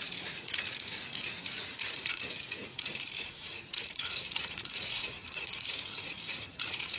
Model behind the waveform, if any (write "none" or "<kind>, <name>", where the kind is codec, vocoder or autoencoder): vocoder, Vocos